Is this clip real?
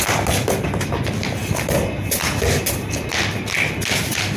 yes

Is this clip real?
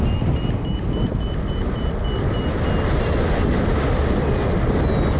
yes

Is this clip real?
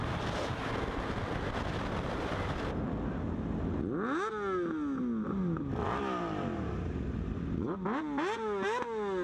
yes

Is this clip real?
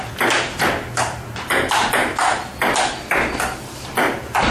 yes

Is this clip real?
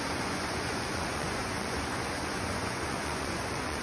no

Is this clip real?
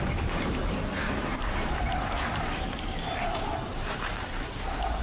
no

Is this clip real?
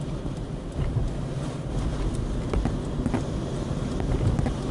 yes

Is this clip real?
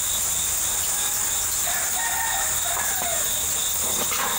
yes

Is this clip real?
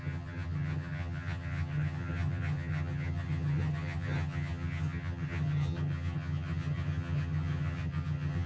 no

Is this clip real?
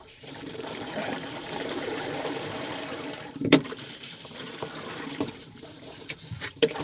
no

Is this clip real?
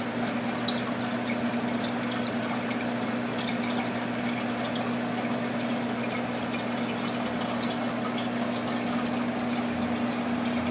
yes